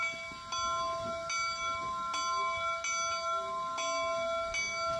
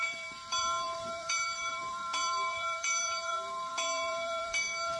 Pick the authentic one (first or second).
first